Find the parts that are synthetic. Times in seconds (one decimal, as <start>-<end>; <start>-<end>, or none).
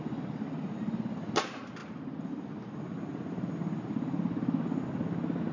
none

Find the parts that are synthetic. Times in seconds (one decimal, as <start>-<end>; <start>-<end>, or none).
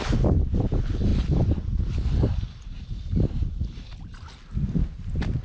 none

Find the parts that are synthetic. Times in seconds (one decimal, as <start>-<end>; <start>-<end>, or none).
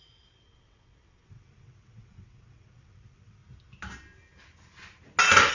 0.0-3.4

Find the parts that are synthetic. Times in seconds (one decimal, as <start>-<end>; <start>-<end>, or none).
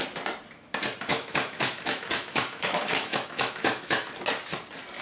1.1-4.1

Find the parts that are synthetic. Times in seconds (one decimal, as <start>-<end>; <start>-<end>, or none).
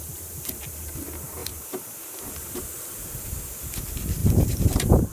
1.4-2.6; 4.2-5.1